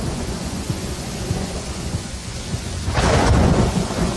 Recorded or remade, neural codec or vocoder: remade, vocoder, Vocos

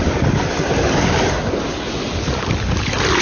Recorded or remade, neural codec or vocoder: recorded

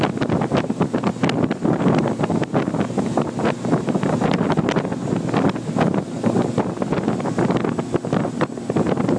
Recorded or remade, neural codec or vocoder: recorded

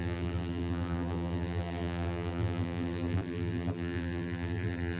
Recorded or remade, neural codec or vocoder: remade, vocoder, BigVGAN v2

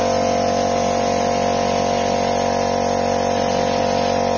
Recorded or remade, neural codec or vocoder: recorded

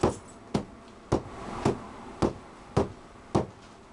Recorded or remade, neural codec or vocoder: recorded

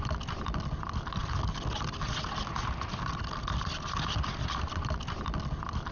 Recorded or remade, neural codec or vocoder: recorded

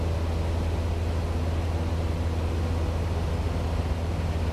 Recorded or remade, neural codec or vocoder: recorded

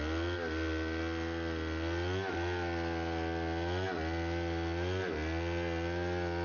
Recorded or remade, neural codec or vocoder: recorded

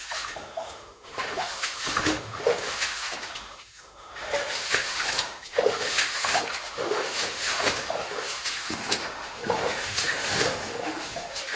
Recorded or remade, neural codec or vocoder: remade, autoencoder, DAC-VAE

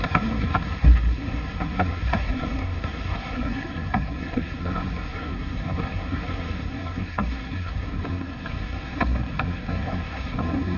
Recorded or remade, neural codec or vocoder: remade, codec, SNAC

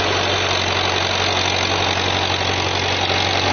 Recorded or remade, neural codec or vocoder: recorded